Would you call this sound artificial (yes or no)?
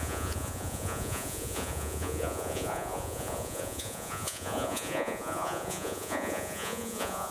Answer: yes